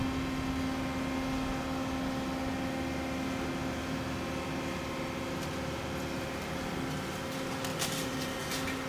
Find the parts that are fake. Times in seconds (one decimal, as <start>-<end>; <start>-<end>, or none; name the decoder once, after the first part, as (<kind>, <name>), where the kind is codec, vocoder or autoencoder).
7.7-8.4 (vocoder, BigVGAN v2)